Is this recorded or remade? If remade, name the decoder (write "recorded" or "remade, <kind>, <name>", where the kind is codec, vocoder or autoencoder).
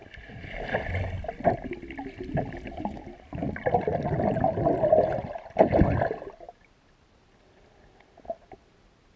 recorded